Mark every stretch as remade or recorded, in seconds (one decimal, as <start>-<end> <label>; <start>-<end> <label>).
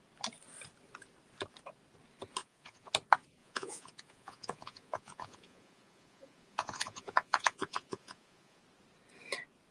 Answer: 0.0-2.4 recorded; 2.4-2.9 remade; 2.9-3.4 recorded; 3.4-8.6 remade; 8.6-9.7 recorded